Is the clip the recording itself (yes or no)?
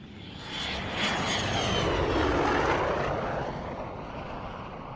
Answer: yes